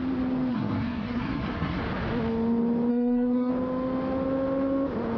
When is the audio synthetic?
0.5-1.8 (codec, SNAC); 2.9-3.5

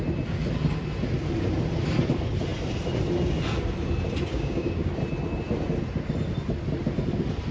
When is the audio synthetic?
4.3-4.9 (codec, DAC)

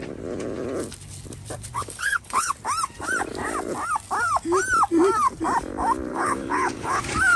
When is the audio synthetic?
1.7-2.5 (codec, HILCodec); 6.1-7.0

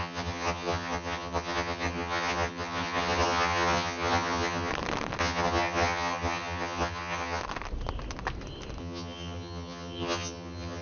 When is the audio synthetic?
0.0-4.7 (vocoder, HiFi-GAN); 5.2-7.4; 8.8-10.8

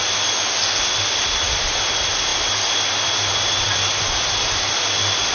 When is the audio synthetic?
none

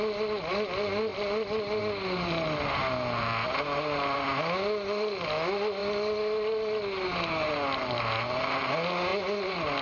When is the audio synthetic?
none

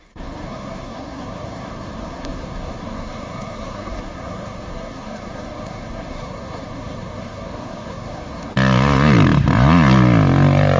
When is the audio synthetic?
0.0-8.5 (codec, SNAC)

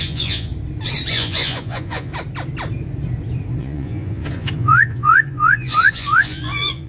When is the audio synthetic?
0.0-0.5 (vocoder, Vocos); 1.1-2.1; 3.6-6.9